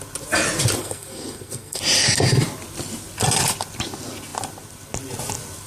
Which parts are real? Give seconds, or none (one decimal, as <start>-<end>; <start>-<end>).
0.0-0.8; 1.8-5.7